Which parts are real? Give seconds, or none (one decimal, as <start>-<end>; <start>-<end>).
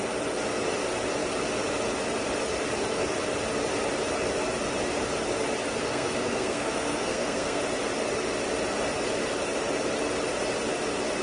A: 0.0-5.8; 7.6-11.2